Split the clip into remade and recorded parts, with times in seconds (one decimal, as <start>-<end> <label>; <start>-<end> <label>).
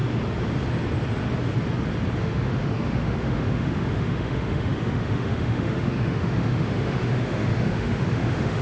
0.0-2.2 recorded; 2.2-8.6 remade